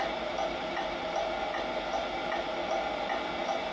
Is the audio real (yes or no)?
yes